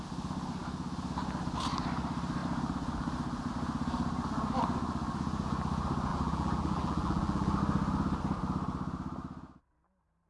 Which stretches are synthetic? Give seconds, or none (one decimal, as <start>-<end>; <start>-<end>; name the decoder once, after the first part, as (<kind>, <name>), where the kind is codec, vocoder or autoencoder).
6.1-7.6 (vocoder, BigVGAN v2)